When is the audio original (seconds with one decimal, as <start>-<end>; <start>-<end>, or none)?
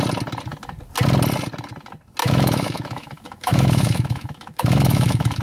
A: 0.0-2.2